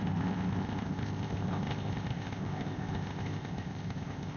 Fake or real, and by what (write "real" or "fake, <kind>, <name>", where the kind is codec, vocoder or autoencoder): fake, codec, ZipCodec